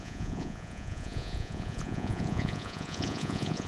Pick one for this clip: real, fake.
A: fake